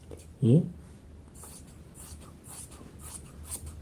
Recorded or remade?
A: remade